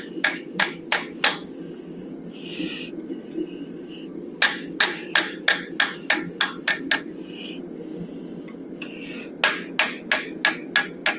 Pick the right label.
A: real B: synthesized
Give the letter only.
A